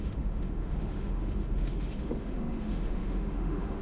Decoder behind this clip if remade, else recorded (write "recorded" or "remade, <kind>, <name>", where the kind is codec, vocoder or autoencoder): remade, autoencoder, DAC-VAE